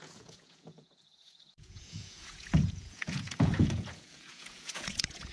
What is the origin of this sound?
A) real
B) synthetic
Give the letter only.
B